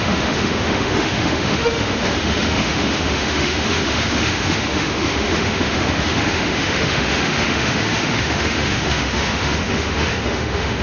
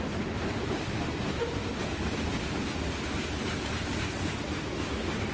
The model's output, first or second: first